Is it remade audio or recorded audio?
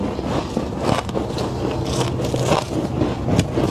recorded